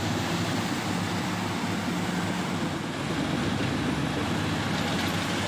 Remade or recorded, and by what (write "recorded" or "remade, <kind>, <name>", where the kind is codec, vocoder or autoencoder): recorded